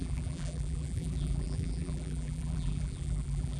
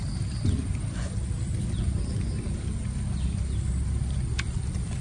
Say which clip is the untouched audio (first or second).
second